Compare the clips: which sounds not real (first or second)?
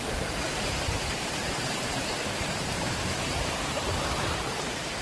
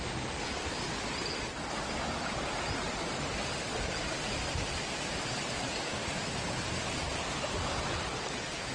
first